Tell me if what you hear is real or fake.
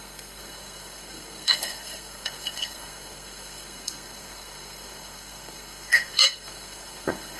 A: fake